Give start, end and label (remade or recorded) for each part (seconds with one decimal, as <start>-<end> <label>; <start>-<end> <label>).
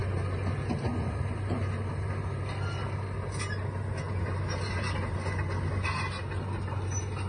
0.0-7.3 recorded